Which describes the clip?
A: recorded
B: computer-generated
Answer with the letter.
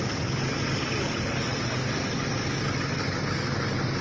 A